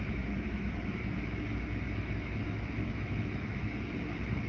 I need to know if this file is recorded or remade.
remade